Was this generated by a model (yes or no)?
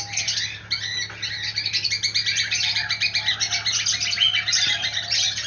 no